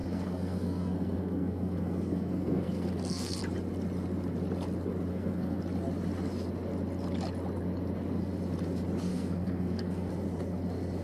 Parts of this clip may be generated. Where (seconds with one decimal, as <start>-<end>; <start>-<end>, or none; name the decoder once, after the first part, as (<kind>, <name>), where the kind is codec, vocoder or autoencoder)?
0.0-3.4 (codec, SNAC); 5.1-5.6; 9.1-10.1